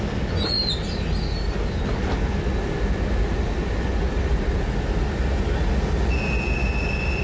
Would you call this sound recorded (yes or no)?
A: yes